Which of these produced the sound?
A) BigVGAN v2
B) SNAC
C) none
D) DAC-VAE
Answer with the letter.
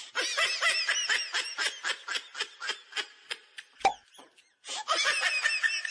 C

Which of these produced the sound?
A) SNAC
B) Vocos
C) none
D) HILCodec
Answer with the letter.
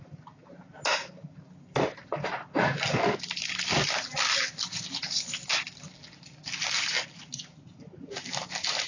C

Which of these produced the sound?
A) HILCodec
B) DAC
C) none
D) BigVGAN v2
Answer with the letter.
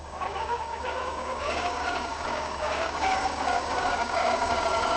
B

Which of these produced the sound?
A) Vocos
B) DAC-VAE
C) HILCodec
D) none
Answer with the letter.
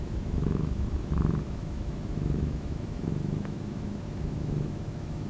B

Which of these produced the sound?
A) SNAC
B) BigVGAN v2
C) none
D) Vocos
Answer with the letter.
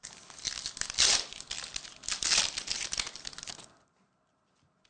C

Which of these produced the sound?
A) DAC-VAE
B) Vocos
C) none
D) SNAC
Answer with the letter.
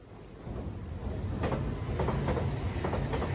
C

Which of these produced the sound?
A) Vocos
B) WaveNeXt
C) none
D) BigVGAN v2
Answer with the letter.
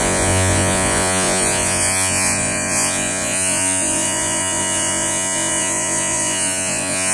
A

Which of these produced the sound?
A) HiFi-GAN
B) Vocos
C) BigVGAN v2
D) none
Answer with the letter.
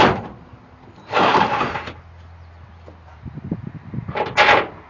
D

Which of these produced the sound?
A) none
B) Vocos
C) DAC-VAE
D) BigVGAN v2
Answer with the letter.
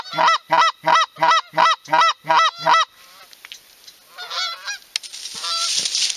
A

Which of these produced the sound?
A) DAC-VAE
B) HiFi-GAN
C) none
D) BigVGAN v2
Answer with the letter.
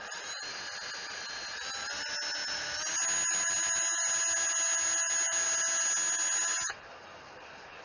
C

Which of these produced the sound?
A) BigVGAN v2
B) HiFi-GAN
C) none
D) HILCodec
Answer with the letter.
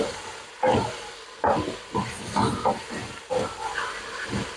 C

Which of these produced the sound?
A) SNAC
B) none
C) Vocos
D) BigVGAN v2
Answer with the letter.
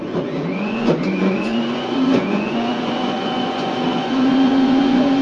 C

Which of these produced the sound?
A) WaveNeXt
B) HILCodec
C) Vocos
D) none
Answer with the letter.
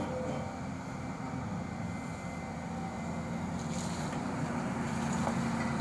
D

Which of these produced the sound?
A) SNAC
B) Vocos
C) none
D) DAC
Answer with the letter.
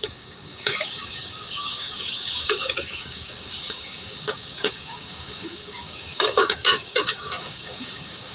D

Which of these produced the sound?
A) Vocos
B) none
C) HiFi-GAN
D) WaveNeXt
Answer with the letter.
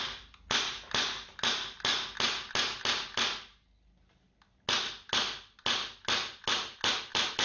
B